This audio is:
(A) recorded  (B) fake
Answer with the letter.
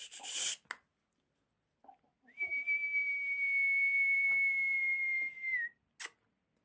A